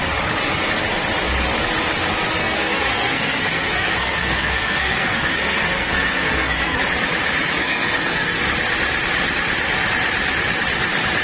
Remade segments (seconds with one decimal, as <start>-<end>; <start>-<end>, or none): 2.4-6.8; 7.6-8.4